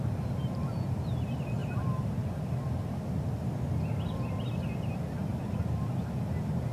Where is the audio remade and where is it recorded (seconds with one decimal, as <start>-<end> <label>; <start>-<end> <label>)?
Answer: 0.0-6.7 recorded